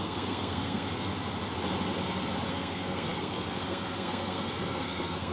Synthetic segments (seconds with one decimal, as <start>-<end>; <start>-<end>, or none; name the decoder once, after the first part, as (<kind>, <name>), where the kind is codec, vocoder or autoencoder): 0.0-1.1 (codec, SNAC); 2.5-5.3